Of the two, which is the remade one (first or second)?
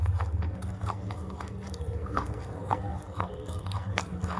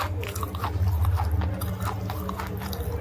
first